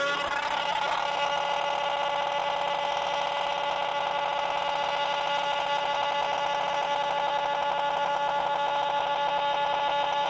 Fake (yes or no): no